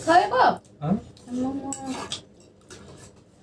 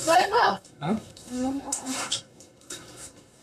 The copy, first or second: second